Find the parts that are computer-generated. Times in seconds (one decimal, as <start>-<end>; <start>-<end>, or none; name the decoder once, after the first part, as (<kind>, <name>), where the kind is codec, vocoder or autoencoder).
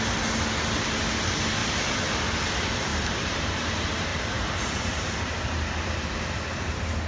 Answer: 1.6-2.2 (vocoder, BigVGAN v2); 2.9-3.5; 4.1-7.1